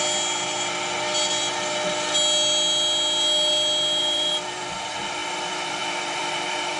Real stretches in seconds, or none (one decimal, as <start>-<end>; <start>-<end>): 0.0-4.0; 4.7-5.2